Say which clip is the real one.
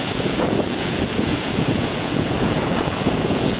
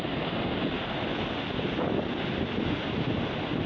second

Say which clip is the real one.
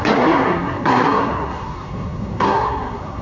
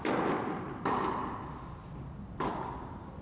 second